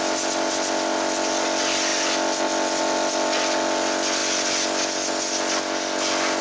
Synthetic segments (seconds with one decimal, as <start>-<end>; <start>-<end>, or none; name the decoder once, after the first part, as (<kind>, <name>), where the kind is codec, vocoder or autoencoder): none